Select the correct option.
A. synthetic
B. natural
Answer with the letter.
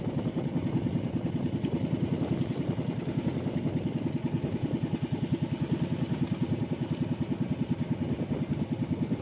B